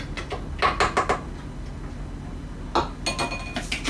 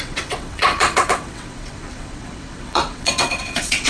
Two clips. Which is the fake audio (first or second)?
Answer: second